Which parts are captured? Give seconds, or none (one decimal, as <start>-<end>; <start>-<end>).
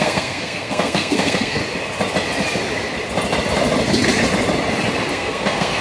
1.6-5.1